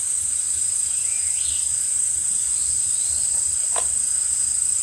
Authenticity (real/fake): real